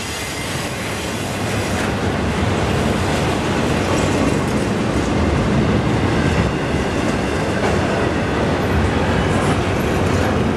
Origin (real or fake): real